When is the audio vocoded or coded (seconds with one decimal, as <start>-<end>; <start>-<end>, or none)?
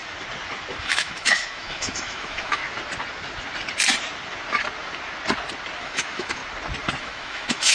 0.8-2.6; 5.8-6.4; 7.0-7.7